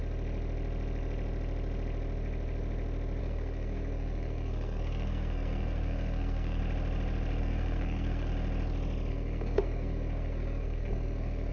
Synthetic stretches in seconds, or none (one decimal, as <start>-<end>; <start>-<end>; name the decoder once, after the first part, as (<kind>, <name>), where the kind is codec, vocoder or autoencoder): 3.2-6.6 (codec, SNAC); 7.4-8.3; 9.1-11.5